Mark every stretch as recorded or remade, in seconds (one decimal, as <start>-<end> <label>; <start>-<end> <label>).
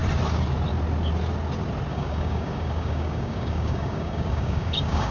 0.0-1.9 recorded; 1.9-5.1 remade